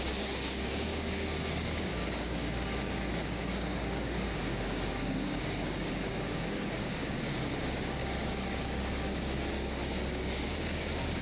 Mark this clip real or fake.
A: fake